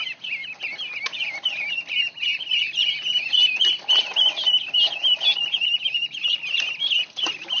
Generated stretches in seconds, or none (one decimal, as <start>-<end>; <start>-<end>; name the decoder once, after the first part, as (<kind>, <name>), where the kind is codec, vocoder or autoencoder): none